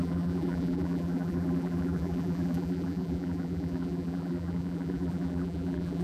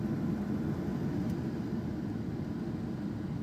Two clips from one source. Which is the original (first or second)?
second